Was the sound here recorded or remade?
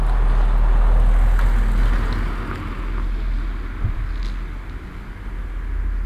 recorded